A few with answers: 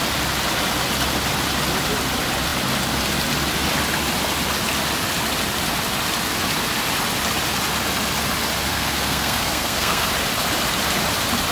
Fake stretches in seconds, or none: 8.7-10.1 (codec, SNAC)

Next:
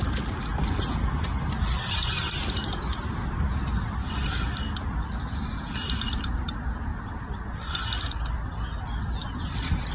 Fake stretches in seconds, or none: none

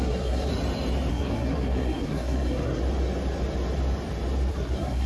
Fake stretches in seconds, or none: 0.0-0.5 (codec, SNAC); 1.1-2.8; 4.5-5.1